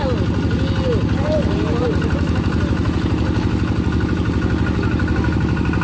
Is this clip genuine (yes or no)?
yes